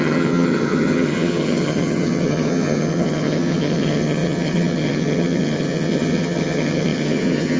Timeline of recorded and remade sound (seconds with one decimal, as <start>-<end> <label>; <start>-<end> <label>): 0.0-7.6 remade